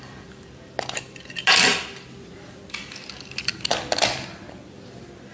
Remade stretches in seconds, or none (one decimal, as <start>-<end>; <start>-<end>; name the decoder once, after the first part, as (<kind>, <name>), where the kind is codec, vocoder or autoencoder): none